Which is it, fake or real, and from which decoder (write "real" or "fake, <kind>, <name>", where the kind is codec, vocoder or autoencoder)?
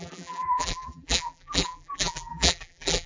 fake, vocoder, BigVGAN v2